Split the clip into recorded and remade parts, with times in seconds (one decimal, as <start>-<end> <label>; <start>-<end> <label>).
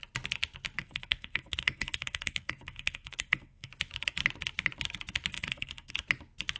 0.0-0.8 recorded; 0.8-3.7 remade; 3.7-5.3 recorded; 5.3-5.9 remade; 5.9-6.6 recorded